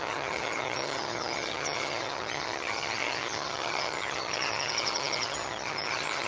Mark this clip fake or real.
fake